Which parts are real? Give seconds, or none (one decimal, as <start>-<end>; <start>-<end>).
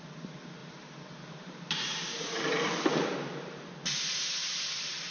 0.0-0.6; 3.7-5.1